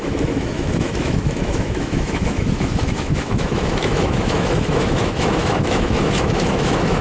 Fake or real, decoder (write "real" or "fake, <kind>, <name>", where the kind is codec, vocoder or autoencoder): fake, autoencoder, DAC-VAE